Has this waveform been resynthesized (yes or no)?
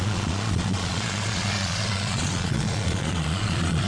yes